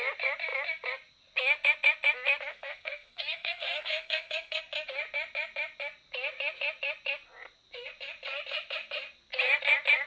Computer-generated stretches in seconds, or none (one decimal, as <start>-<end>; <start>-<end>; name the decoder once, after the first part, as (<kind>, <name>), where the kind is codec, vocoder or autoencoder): 2.5-4.6 (codec, SNAC)